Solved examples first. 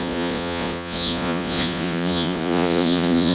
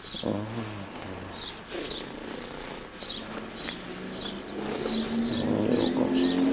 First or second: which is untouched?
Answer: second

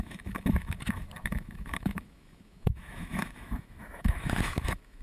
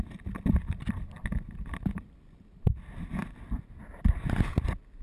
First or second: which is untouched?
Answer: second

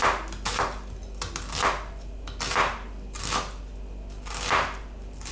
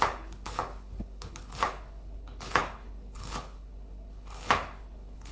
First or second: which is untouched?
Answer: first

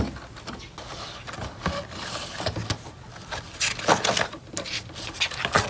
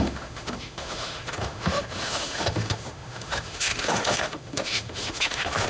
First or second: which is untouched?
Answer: first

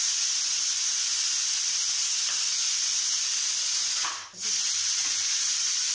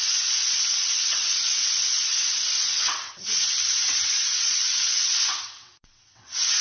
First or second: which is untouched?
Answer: first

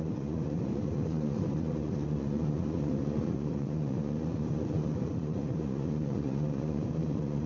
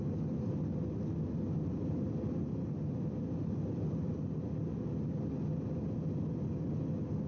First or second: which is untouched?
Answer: second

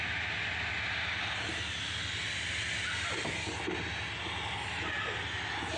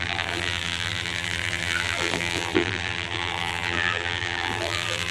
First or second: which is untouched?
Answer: first